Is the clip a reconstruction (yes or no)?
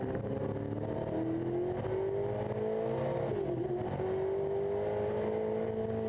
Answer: no